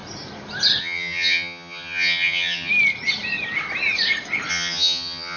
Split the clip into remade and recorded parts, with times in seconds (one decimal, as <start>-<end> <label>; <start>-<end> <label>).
0.0-0.8 recorded; 0.8-2.7 remade; 2.7-4.5 recorded; 4.5-5.4 remade